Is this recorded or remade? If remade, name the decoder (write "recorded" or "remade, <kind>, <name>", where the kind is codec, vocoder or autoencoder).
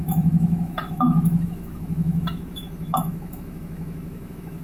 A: remade, autoencoder, DAC-VAE